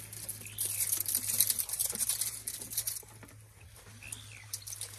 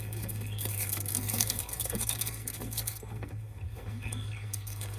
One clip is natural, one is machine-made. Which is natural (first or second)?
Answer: first